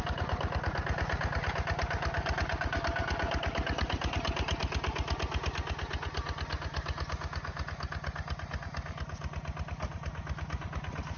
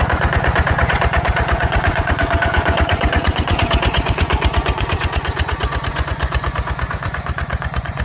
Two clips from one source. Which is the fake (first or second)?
second